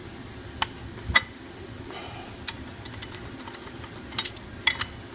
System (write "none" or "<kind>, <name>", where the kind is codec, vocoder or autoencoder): none